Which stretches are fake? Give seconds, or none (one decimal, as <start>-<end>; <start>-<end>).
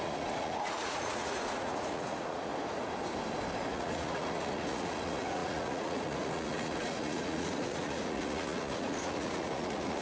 0.0-2.5; 3.7-10.0